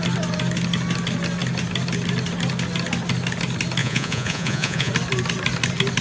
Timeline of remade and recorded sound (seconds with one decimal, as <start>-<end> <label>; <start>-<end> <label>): 0.0-3.8 recorded; 3.8-4.9 remade; 4.9-6.0 recorded